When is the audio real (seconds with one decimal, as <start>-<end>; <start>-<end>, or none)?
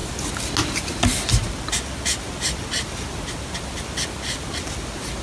0.0-5.2